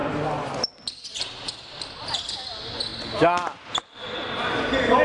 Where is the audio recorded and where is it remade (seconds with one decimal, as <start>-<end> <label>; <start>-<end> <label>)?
0.0-5.0 recorded